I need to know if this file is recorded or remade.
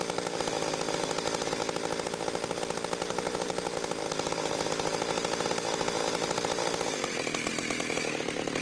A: recorded